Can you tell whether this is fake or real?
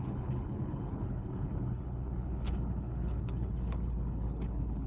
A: fake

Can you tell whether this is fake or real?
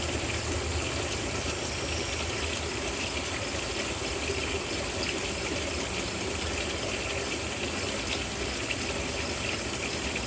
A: real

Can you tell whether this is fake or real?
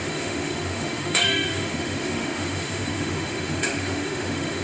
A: fake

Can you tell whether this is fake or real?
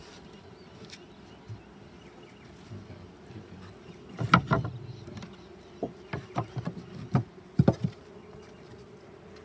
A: real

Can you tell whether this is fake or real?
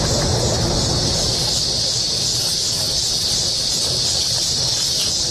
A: real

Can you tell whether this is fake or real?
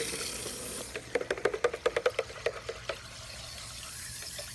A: real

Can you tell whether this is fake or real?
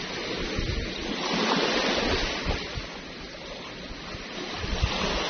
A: real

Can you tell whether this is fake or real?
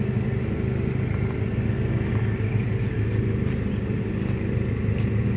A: real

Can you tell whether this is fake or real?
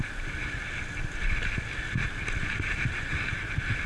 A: real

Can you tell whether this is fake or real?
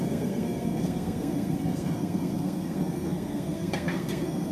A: fake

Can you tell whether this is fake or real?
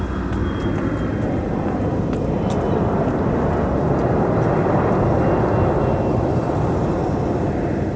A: real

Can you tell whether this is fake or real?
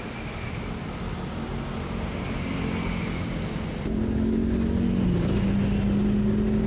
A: real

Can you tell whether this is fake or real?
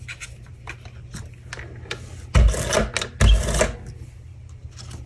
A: real